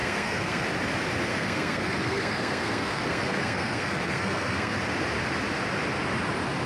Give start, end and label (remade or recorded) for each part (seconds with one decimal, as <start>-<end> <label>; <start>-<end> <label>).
0.0-0.6 remade; 0.6-1.3 recorded; 1.3-4.8 remade; 4.8-6.7 recorded